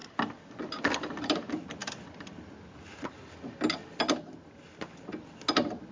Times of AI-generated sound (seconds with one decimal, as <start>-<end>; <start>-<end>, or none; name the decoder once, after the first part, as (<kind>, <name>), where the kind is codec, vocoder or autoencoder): none